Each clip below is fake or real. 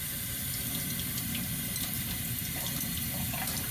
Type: fake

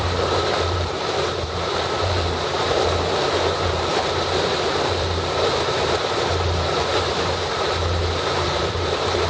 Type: fake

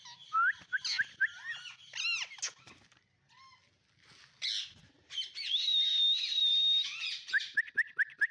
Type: real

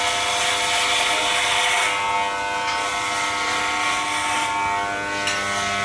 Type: real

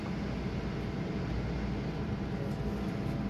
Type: real